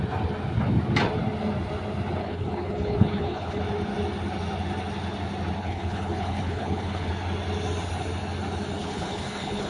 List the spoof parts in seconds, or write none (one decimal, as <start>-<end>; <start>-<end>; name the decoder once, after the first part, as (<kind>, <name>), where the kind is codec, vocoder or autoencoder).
2.2-3.6 (codec, HILCodec); 5.6-7.1; 8.8-9.7